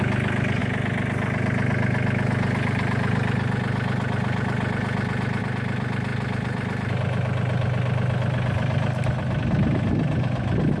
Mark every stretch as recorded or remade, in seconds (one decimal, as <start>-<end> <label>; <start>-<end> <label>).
0.0-10.8 recorded